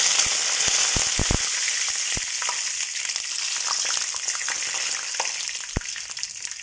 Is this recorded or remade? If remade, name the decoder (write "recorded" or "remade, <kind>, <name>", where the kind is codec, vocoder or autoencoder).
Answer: recorded